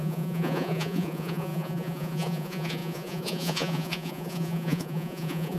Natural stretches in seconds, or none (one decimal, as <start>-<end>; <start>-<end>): none